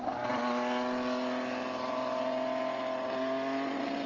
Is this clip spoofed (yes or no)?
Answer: no